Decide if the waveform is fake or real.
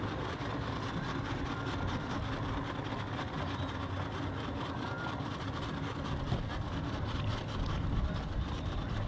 fake